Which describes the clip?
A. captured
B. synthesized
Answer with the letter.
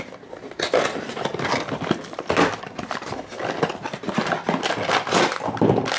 A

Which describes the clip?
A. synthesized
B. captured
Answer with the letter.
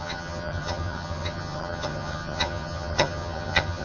A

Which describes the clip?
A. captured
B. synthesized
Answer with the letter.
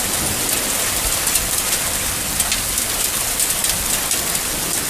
B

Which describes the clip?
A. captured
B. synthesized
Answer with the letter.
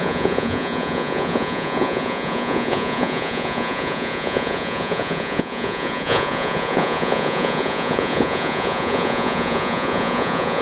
B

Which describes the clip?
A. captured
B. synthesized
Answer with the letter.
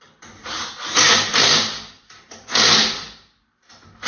A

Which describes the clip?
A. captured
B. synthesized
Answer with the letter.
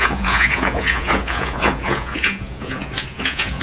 B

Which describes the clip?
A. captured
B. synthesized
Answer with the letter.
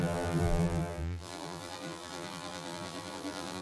B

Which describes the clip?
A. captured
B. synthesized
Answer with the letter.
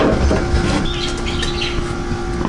A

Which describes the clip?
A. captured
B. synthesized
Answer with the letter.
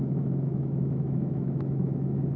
B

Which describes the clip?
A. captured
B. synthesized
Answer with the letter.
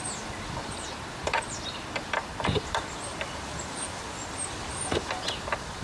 B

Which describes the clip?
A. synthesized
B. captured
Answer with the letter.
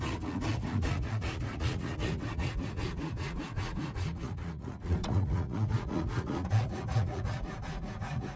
A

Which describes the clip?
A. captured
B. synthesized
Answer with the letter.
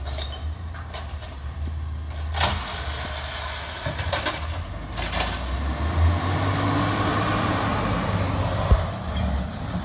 A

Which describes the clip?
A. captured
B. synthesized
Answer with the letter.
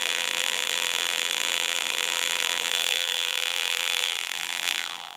B